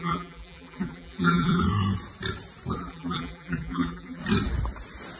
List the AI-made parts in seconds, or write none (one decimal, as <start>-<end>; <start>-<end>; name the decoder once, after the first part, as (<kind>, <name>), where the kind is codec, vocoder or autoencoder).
0.0-1.6 (vocoder, BigVGAN v2); 2.8-4.2